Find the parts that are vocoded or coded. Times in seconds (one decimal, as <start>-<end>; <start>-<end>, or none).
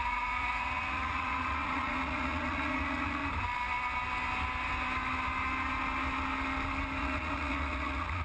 0.0-3.2; 7.0-8.2